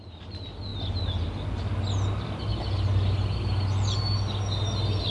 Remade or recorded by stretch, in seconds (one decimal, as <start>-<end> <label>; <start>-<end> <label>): 0.0-5.1 recorded